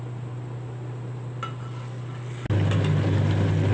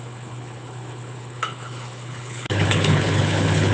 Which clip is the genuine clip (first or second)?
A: first